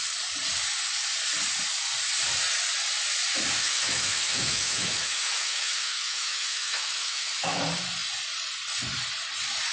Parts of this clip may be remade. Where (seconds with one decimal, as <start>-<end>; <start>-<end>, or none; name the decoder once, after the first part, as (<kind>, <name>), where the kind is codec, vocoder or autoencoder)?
3.6-7.6 (autoencoder, DAC-VAE)